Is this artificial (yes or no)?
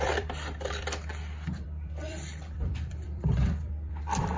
yes